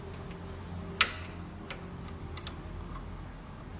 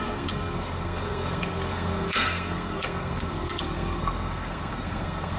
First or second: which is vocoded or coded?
second